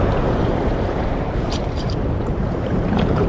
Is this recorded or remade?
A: remade